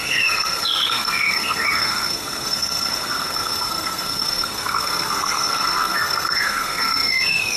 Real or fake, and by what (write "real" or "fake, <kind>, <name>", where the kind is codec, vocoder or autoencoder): fake, codec, SNAC